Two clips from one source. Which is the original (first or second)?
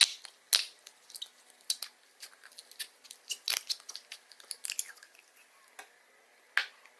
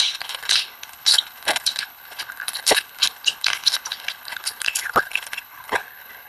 first